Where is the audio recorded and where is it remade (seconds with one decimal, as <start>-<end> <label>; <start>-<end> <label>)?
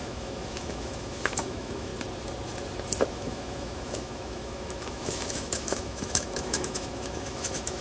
0.0-1.9 remade; 1.9-3.1 recorded; 3.1-7.8 remade